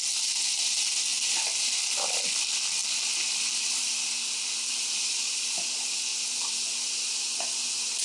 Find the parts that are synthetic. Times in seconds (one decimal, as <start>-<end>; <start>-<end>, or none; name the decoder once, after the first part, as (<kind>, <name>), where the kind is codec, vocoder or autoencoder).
none